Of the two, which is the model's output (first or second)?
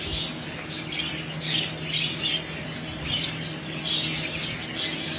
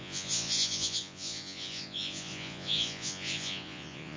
second